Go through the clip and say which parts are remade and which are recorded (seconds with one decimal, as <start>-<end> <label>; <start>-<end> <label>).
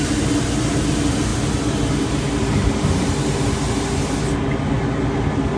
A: 0.0-5.6 recorded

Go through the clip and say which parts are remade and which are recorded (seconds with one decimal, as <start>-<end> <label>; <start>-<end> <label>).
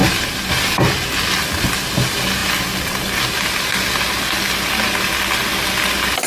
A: 0.0-6.3 recorded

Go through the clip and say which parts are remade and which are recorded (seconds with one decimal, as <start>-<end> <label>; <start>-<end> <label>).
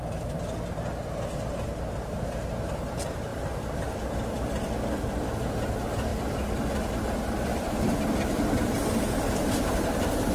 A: 0.0-3.3 recorded; 3.3-5.3 remade; 5.3-6.1 recorded; 6.1-7.1 remade; 7.1-7.5 recorded; 7.5-9.9 remade; 9.9-10.3 recorded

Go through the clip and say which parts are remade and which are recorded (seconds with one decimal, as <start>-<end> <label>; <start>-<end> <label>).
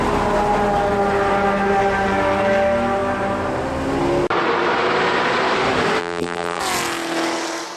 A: 0.0-6.0 recorded; 6.0-6.6 remade; 6.6-7.8 recorded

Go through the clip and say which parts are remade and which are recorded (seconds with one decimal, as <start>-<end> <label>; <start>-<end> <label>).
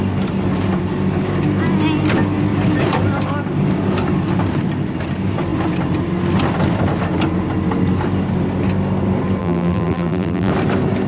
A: 0.0-9.4 recorded; 9.4-10.5 remade; 10.5-11.1 recorded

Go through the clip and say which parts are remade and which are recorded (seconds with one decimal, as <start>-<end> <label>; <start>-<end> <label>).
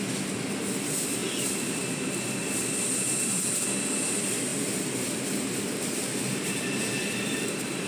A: 0.0-1.2 recorded; 1.2-2.2 remade; 2.2-4.5 recorded; 4.5-7.9 remade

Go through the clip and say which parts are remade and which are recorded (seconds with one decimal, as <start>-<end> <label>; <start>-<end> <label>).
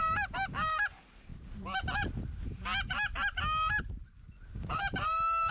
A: 0.0-1.3 remade; 1.3-4.6 recorded; 4.6-5.5 remade